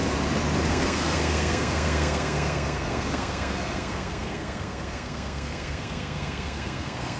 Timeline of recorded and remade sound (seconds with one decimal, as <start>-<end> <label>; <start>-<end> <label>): 0.0-0.7 recorded; 0.7-7.2 remade